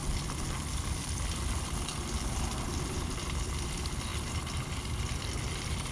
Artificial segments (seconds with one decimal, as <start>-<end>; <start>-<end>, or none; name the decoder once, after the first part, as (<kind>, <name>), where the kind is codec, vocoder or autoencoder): 0.0-3.5 (vocoder, BigVGAN v2); 4.1-5.5